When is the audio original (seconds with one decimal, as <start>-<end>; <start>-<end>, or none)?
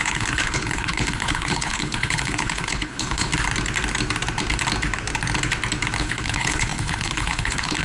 3.3-6.0